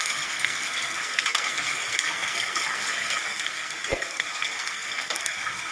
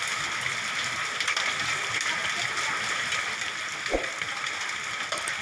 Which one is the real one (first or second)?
second